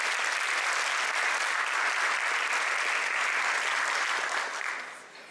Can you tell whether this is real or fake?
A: real